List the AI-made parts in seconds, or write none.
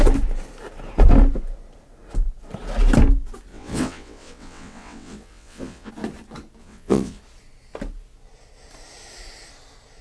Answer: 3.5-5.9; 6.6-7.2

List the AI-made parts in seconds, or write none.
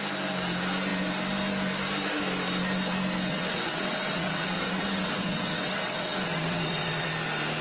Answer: 3.3-7.1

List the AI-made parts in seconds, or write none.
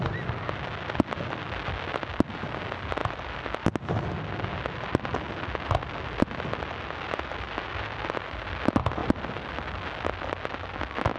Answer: none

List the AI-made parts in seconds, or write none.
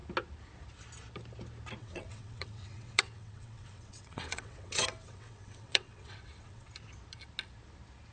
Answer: 1.8-6.7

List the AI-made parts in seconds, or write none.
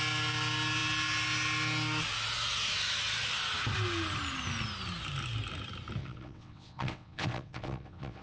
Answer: 6.0-8.2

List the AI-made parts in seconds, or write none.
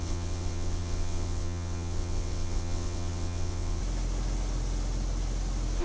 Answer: 0.0-3.8